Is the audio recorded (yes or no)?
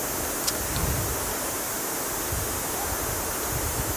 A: yes